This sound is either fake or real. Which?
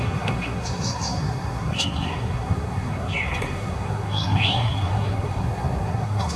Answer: fake